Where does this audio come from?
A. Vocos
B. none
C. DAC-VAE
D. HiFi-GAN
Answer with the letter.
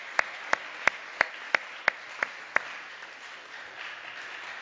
B